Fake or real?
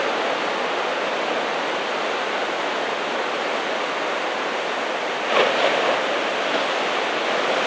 real